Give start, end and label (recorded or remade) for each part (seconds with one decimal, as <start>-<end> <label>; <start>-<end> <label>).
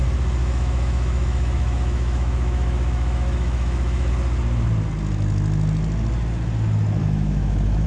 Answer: 0.0-0.4 recorded; 0.4-4.1 remade; 4.1-7.0 recorded; 7.0-7.9 remade